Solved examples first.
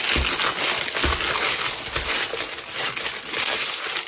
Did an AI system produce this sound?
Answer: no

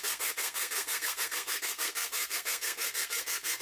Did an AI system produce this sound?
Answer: yes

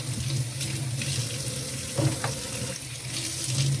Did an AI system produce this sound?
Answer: no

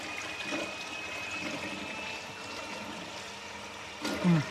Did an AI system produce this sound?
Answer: no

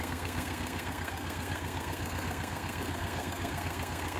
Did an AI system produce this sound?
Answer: yes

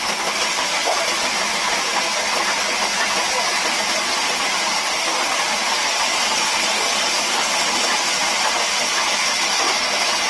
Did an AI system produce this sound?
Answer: no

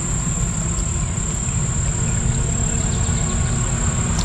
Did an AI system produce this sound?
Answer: no